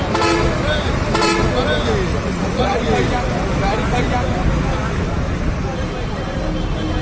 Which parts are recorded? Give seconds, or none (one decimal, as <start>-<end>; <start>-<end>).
0.0-2.1; 2.8-7.0